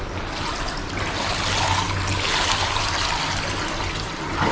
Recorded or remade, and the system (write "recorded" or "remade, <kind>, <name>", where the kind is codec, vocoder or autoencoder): recorded